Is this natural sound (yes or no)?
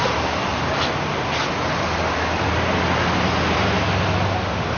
yes